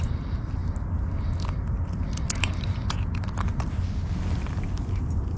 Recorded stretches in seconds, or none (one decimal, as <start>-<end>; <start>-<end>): 0.0-5.4